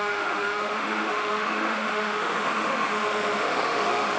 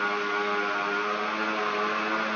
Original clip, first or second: second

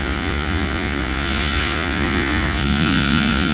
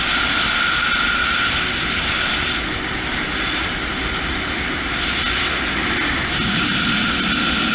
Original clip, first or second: second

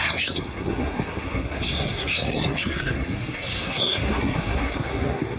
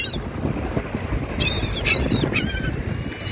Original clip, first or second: second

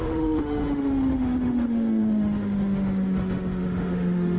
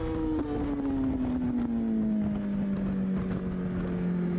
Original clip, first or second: second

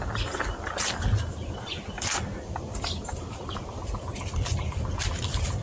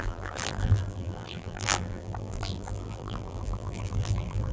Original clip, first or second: first